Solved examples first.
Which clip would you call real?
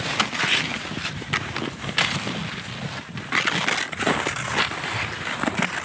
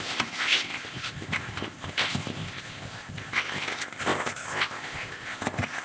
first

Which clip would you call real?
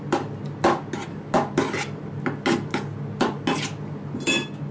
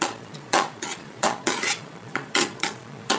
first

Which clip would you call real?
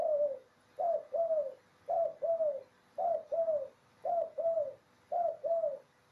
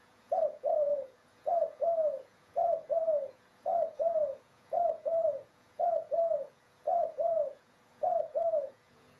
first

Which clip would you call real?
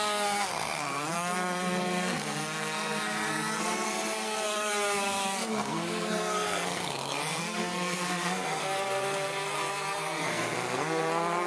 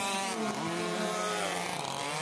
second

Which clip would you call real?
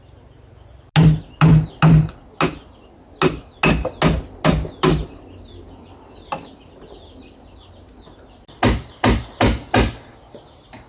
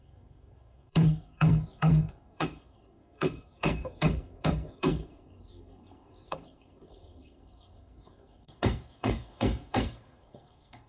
first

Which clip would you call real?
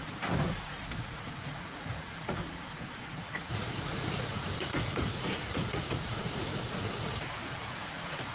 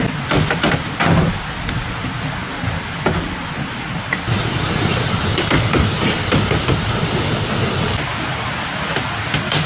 second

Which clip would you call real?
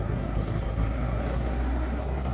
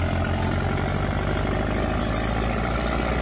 second